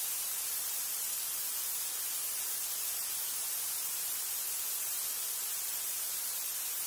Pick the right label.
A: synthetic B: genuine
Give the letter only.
A